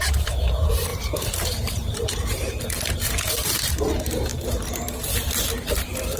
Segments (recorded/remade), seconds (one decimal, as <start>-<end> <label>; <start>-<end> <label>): 0.0-4.3 remade; 4.3-5.7 recorded; 5.7-6.2 remade